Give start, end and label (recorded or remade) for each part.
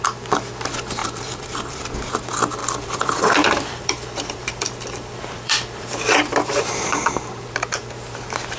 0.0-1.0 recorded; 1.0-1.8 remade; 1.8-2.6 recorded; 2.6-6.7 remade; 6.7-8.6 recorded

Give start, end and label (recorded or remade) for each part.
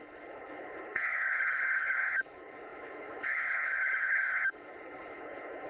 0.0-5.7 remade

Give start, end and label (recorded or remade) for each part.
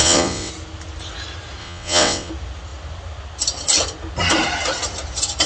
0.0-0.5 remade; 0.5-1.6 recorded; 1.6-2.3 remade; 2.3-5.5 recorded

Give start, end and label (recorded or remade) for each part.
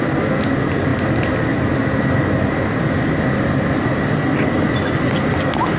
0.0-5.8 recorded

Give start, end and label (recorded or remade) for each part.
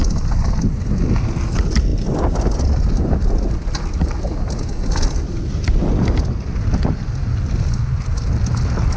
0.0-9.0 recorded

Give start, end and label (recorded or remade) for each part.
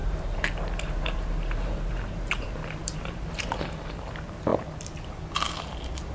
0.0-3.7 remade; 3.7-6.1 recorded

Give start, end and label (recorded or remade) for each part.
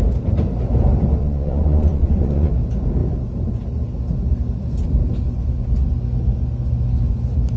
0.0-1.2 recorded; 1.2-2.5 remade; 2.5-7.6 recorded